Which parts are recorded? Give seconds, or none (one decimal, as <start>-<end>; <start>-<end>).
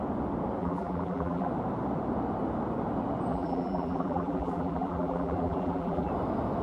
0.0-0.6; 1.5-3.3; 6.1-6.6